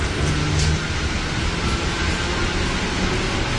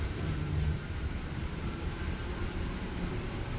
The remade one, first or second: second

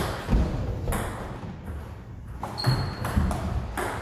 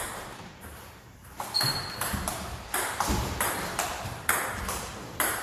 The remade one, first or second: second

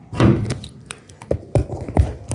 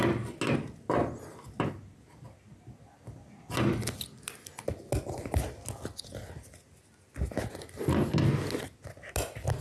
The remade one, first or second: first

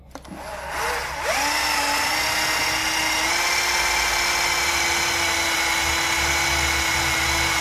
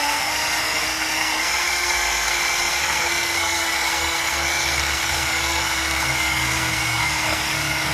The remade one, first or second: second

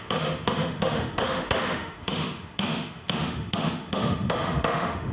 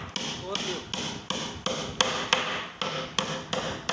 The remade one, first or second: first